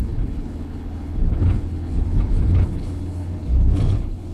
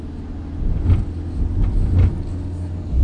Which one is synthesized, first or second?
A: first